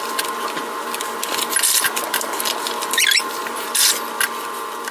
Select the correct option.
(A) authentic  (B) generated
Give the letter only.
B